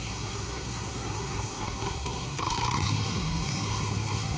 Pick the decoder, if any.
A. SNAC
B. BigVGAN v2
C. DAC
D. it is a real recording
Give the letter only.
A